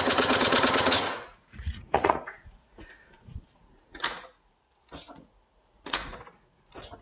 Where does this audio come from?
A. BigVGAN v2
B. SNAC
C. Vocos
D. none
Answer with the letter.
C